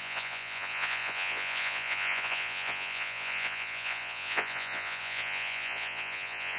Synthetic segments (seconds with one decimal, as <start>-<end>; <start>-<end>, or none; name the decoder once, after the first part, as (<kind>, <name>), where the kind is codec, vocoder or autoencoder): 0.0-6.6 (vocoder, Vocos)